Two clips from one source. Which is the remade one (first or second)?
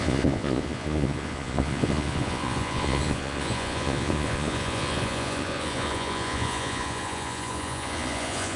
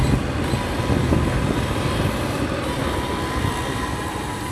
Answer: first